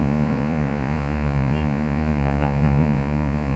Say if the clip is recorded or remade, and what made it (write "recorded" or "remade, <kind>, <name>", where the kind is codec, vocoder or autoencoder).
remade, vocoder, Vocos